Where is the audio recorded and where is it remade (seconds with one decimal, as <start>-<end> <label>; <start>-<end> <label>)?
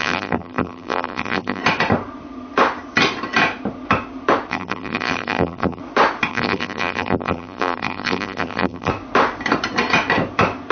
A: 0.0-1.6 remade; 1.6-4.5 recorded; 4.5-5.8 remade; 5.8-6.3 recorded; 6.3-8.9 remade; 8.9-10.7 recorded